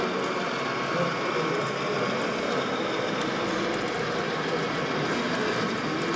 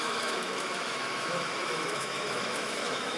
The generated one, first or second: second